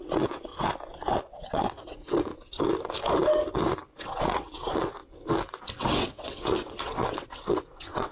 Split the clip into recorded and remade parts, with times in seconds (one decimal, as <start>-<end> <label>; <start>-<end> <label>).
0.0-0.5 remade; 0.5-1.2 recorded; 1.2-2.3 remade; 2.3-4.0 recorded; 4.0-5.0 remade; 5.0-5.8 recorded; 5.8-8.1 remade